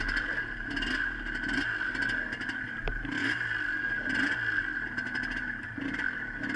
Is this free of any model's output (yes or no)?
yes